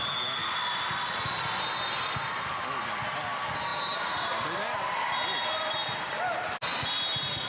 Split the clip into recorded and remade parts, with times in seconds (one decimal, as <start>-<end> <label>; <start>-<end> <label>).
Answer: 0.0-7.5 recorded